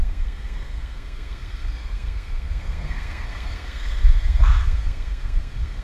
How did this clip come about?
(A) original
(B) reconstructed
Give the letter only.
B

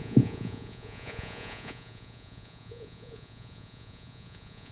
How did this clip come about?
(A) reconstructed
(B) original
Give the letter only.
A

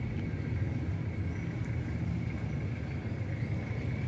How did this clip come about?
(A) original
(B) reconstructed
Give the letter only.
A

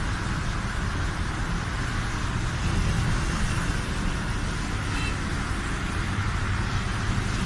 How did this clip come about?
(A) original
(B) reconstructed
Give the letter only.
A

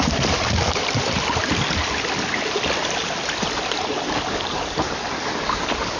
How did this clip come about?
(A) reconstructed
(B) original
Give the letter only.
B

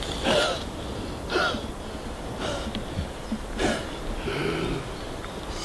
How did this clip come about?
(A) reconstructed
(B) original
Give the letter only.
B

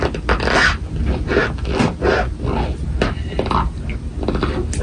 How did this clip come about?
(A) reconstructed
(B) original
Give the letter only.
B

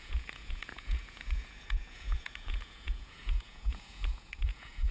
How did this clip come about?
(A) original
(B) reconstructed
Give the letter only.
B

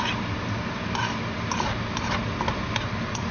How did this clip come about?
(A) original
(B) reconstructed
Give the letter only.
A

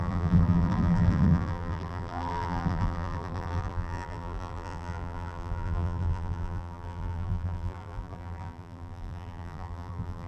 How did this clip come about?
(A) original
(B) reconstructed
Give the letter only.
B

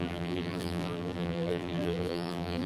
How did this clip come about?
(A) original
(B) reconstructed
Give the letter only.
B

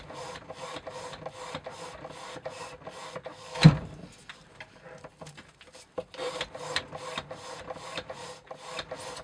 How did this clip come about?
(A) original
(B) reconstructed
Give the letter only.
A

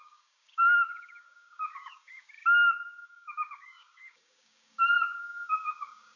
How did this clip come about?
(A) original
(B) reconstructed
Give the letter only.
B